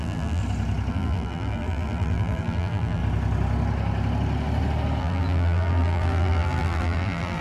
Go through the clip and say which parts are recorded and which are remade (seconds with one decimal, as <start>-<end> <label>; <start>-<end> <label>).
0.0-0.4 remade; 0.4-0.9 recorded; 0.9-3.0 remade; 3.0-5.0 recorded; 5.0-7.4 remade